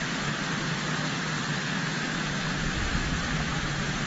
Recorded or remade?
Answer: recorded